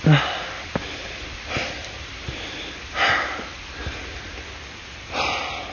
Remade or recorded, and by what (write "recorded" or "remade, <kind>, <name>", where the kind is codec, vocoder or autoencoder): recorded